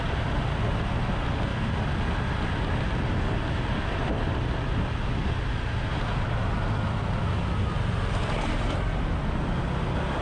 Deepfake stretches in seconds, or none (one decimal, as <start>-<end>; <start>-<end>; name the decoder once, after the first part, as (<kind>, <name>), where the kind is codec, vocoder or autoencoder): 5.9-6.5 (vocoder, BigVGAN v2)